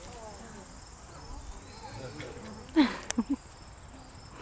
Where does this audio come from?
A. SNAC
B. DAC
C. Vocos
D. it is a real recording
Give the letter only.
D